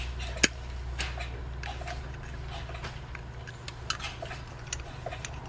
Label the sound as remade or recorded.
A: recorded